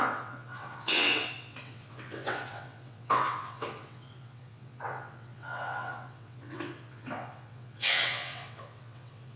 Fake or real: fake